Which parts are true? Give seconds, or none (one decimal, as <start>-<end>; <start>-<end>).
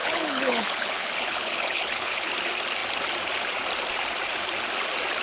2.3-5.2